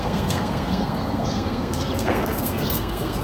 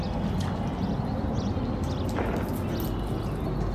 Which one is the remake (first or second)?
first